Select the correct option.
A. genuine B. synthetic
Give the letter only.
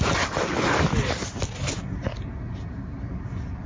A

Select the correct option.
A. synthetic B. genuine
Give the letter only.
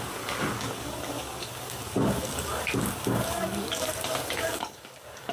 A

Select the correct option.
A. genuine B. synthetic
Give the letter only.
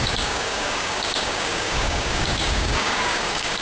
B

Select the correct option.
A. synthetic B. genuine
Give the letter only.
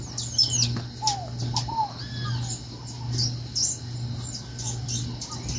B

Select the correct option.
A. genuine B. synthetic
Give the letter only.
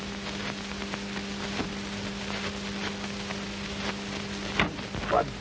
A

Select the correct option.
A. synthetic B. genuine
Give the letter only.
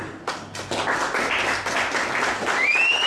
B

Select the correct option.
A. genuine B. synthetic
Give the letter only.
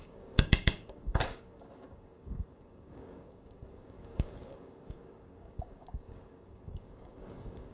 B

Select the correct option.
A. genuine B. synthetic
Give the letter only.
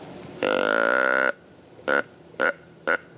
A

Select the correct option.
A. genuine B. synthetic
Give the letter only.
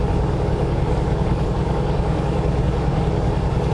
B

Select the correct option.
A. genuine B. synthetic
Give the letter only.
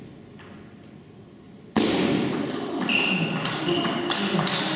A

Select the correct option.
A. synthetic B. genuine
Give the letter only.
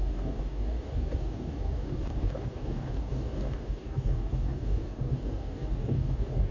A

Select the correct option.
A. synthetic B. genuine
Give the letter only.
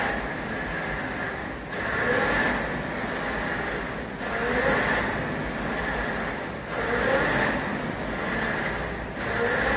B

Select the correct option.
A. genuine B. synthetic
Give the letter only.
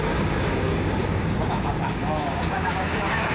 B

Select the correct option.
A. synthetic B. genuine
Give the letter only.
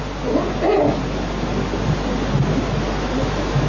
B